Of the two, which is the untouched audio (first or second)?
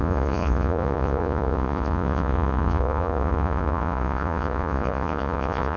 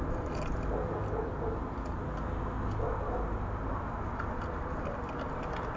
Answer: second